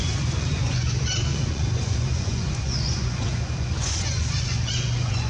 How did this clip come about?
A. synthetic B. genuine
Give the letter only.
A